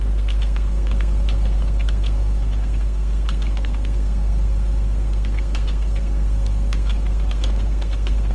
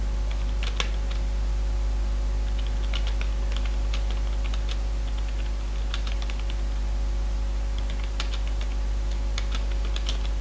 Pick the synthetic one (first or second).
first